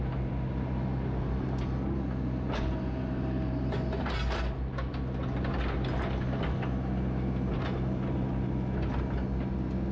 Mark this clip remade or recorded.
recorded